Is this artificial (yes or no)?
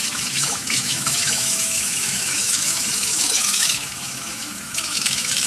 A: yes